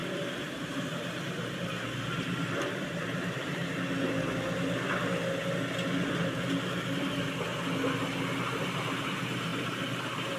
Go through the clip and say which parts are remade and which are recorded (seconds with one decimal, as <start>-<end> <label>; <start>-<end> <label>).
0.0-3.6 remade; 3.6-8.6 recorded; 8.6-10.4 remade